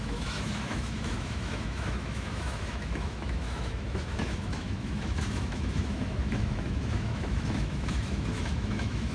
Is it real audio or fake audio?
fake